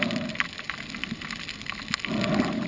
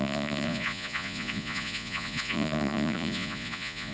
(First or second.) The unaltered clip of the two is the first